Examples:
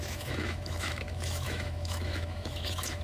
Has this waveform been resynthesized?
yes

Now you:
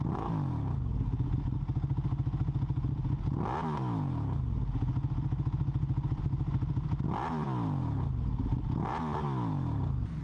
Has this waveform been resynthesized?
no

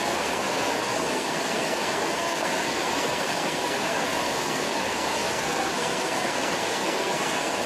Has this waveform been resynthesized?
yes